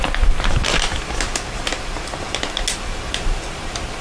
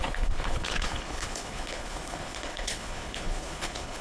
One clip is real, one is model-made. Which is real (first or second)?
first